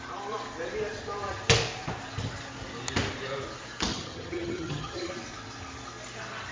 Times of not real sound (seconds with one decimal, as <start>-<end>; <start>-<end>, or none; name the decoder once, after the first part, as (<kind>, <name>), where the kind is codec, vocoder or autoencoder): 3.9-5.1 (vocoder, HiFi-GAN)